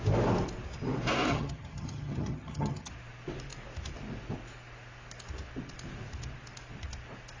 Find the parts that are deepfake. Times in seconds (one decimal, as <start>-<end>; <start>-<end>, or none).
1.3-2.9